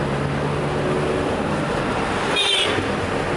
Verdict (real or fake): real